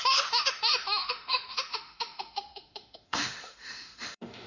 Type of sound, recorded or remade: remade